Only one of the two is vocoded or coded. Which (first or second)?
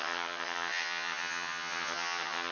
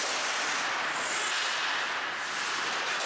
first